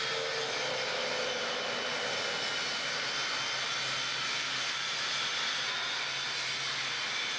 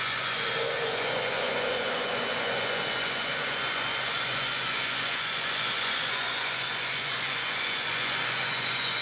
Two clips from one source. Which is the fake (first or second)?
second